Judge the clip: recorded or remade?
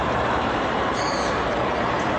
remade